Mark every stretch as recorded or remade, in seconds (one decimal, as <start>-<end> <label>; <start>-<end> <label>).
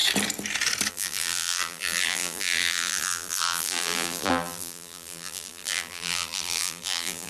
0.0-0.9 recorded; 0.9-7.3 remade